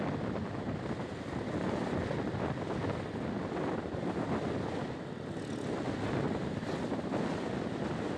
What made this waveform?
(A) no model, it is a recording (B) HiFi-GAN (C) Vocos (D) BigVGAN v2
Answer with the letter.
A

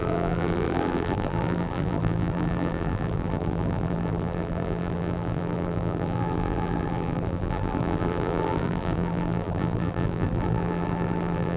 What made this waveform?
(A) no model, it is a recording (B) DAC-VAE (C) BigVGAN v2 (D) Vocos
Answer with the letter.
C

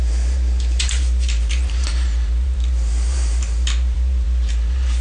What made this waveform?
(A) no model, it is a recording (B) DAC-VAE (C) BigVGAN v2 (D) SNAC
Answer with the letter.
C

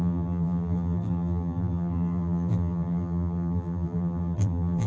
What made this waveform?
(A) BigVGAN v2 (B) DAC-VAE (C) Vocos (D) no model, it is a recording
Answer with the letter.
A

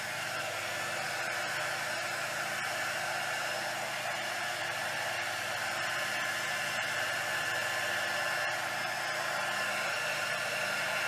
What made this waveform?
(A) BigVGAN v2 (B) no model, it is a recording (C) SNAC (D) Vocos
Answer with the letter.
B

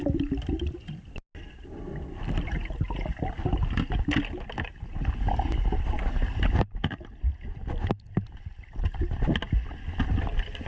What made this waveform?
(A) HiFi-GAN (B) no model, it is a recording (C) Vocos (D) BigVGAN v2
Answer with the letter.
B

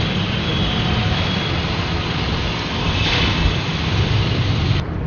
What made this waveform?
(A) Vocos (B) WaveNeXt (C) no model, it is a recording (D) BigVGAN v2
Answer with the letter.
C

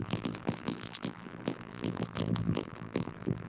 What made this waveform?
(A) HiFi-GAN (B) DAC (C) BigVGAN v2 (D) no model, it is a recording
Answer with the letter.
C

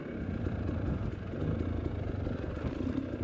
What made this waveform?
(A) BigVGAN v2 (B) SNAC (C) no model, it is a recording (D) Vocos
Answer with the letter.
C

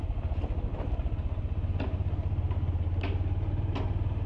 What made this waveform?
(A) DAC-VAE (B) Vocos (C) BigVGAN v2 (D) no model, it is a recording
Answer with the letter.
D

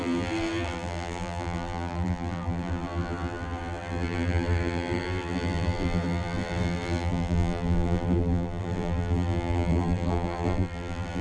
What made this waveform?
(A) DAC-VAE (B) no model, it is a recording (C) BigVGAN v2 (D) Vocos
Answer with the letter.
C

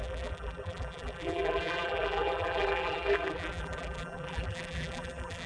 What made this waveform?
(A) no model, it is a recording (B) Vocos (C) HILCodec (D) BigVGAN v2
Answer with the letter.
D